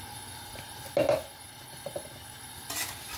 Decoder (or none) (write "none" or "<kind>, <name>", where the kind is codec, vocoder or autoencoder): none